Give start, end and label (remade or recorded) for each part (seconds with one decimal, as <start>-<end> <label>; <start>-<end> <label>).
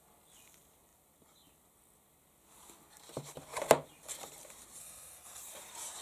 0.0-4.8 recorded; 4.8-5.4 remade; 5.4-6.0 recorded